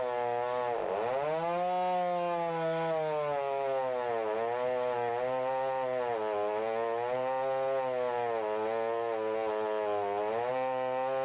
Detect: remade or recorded recorded